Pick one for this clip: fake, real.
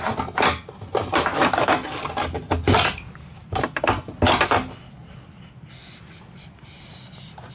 real